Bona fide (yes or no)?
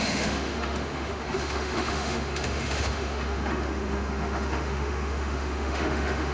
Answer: no